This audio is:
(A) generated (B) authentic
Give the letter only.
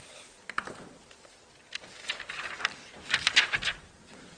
B